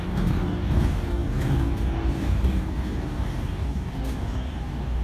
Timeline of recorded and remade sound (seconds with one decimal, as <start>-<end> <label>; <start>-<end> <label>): 0.0-5.0 remade